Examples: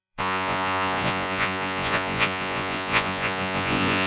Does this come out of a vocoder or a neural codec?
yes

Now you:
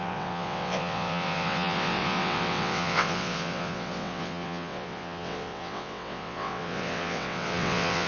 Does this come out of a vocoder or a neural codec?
yes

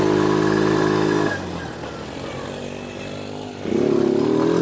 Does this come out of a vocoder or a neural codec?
no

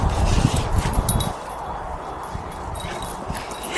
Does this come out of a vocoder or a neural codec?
no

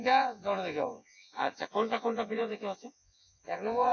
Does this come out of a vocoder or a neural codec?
yes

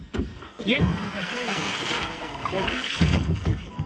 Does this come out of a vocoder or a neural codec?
yes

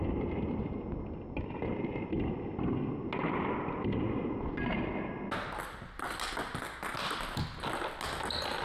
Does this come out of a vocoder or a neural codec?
no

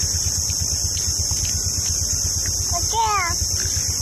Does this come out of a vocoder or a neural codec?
no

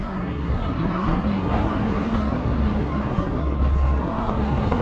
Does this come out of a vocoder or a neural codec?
yes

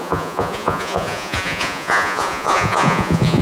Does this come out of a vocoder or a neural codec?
yes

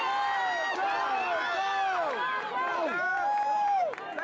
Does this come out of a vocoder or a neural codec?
no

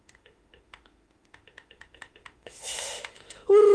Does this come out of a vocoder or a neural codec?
yes